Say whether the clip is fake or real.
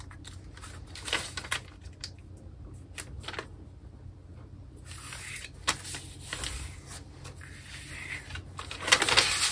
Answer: real